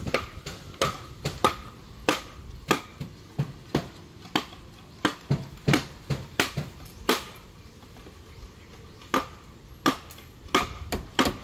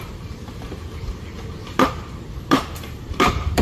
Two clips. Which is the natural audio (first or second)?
first